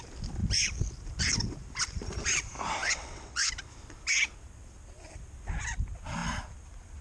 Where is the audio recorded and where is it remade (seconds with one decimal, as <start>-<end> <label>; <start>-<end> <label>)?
0.0-2.8 recorded; 2.8-3.5 remade; 3.5-7.0 recorded